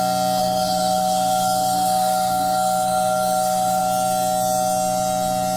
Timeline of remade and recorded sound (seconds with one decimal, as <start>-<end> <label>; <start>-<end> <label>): 0.0-0.4 recorded; 0.4-3.8 remade; 3.8-5.6 recorded